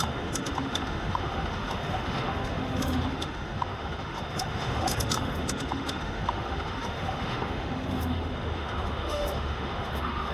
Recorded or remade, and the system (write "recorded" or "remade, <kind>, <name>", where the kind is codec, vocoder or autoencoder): remade, autoencoder, DAC-VAE